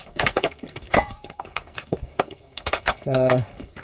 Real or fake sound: fake